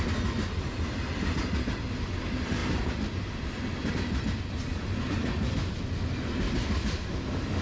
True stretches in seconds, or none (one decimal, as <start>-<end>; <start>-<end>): 0.0-7.6